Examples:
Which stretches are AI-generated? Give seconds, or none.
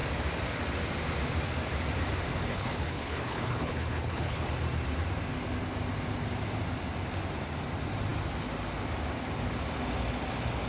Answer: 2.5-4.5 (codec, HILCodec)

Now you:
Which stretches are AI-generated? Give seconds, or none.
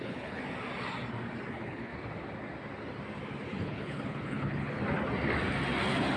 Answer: 0.0-0.4 (codec, HILCodec); 1.5-1.9; 3.6-4.8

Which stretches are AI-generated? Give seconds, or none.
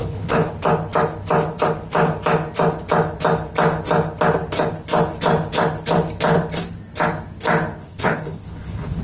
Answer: 0.0-0.5 (codec, HILCodec); 7.8-9.0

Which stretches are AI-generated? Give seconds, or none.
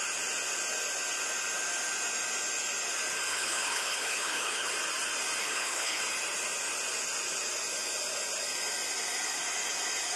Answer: 3.3-4.7 (codec, HILCodec); 5.4-6.0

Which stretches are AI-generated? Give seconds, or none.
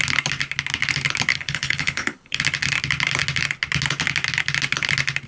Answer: 1.3-2.4 (codec, HILCodec)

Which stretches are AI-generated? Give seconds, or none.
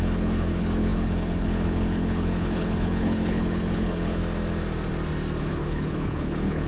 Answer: 0.0-4.2 (codec, HILCodec); 5.4-6.7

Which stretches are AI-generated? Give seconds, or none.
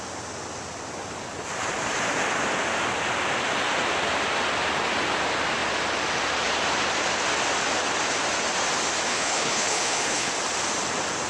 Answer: 9.1-10.3 (codec, HILCodec)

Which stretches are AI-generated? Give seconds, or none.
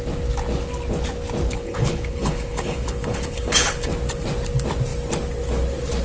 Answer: 1.6-3.9 (codec, HILCodec)